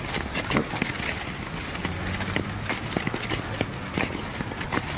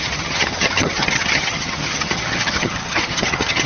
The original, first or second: first